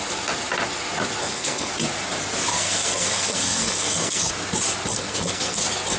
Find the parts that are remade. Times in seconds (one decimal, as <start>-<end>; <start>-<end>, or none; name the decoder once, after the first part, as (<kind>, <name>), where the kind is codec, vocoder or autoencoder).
1.2-1.7 (codec, SNAC); 2.5-4.3; 4.9-5.6

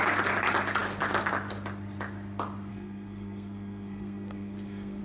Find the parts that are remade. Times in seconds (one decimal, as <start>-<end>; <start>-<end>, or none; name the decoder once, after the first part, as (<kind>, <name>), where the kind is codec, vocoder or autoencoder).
2.7-5.0 (codec, SNAC)

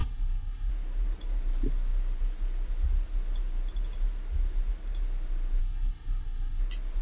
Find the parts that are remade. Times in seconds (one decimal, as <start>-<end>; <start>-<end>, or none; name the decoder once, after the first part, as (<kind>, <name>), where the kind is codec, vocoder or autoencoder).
0.0-0.7 (codec, SNAC); 5.6-6.6

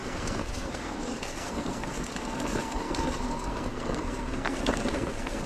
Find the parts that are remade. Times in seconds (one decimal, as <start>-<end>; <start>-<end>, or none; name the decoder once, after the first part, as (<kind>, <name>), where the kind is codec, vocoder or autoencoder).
0.0-5.5 (codec, SNAC)

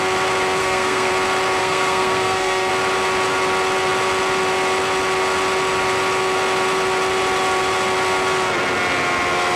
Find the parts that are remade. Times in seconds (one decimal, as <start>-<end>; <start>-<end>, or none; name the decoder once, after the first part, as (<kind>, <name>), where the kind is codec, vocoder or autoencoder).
0.6-1.1 (codec, SNAC); 1.6-2.7

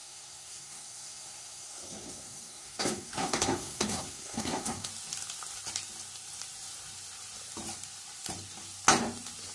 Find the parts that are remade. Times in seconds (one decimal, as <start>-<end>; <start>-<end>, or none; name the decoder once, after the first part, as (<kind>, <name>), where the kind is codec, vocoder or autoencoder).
0.0-4.9 (codec, SNAC)